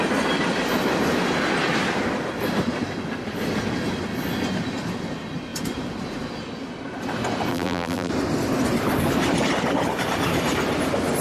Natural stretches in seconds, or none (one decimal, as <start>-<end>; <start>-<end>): 0.0-7.5; 8.1-11.2